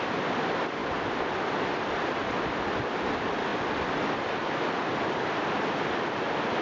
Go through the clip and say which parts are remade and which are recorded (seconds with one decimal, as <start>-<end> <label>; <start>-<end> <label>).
0.0-0.8 remade; 0.8-2.0 recorded; 2.0-6.6 remade